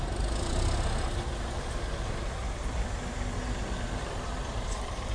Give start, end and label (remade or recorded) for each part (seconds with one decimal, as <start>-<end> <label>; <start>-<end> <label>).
0.0-2.4 recorded; 2.4-5.1 remade